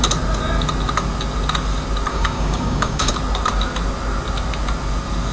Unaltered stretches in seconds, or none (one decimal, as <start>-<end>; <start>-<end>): 0.0-2.1; 3.1-5.3